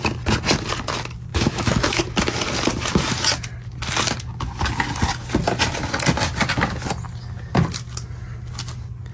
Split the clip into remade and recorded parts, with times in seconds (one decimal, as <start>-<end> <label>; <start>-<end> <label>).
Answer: 0.0-1.3 recorded; 1.3-2.0 remade; 2.0-9.1 recorded